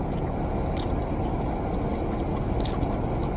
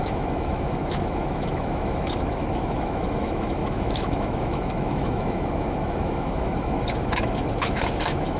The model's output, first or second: second